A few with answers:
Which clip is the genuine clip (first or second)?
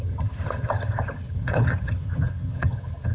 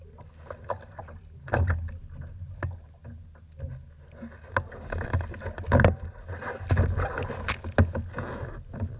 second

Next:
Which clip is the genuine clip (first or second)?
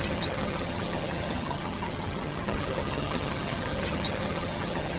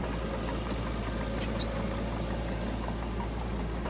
second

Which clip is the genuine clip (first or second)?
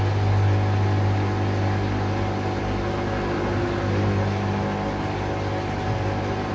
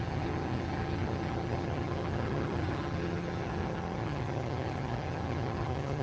first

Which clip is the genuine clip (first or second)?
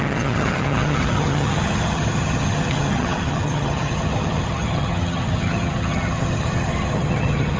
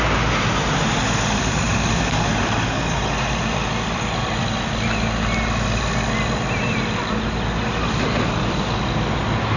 second